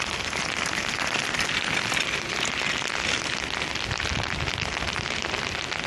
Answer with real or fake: real